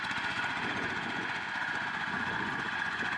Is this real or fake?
fake